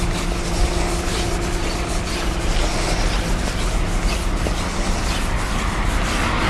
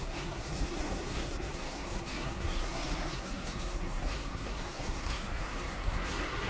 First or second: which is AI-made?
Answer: second